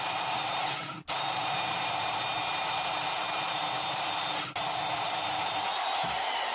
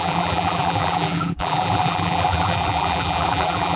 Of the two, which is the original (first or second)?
first